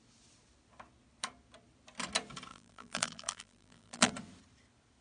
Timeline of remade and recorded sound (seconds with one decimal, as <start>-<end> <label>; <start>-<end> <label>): 0.0-2.5 recorded; 2.5-4.1 remade; 4.1-5.0 recorded